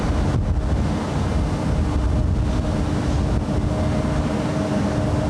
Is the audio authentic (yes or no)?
yes